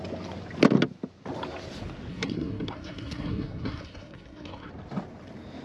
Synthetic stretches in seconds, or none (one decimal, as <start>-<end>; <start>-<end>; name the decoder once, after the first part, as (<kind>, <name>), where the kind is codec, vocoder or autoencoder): 2.1-4.7 (codec, SNAC)